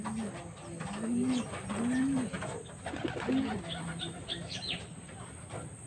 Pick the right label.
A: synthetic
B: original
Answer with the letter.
B